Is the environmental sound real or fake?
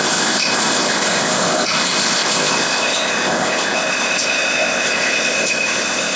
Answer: fake